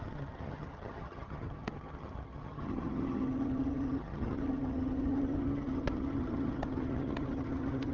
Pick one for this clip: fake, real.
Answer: fake